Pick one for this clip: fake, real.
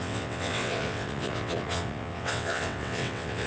fake